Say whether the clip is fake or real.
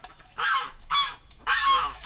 fake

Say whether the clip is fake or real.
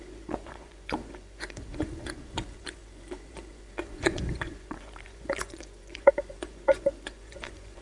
fake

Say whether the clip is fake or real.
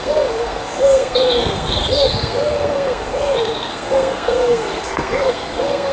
fake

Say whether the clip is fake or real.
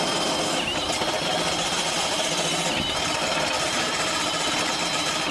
real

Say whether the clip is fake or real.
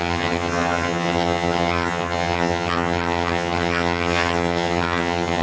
fake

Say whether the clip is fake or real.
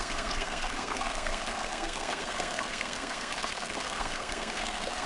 fake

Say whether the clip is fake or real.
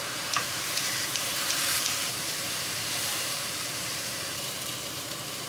fake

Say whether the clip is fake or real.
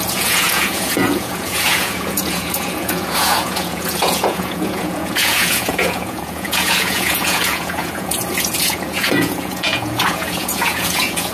fake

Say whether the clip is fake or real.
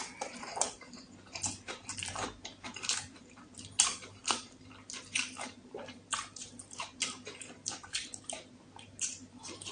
fake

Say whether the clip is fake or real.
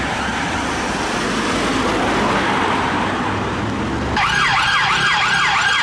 real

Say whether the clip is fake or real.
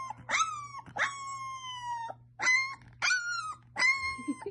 real